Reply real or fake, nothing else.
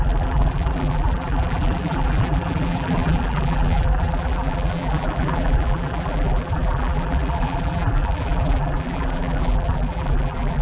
fake